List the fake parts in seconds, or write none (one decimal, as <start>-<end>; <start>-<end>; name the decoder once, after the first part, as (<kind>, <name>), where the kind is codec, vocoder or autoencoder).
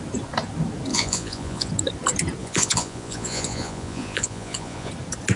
0.9-1.7 (vocoder, Vocos); 2.4-4.9